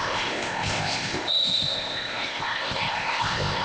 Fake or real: fake